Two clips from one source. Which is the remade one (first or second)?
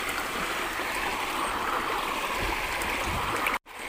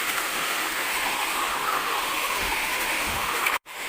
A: second